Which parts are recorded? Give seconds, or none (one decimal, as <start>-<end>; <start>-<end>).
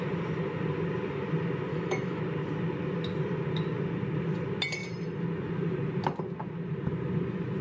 0.0-1.7; 2.2-7.6